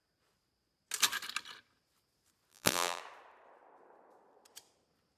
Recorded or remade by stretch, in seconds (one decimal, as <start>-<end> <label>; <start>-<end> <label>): 0.0-2.5 recorded; 2.5-3.0 remade; 3.0-5.2 recorded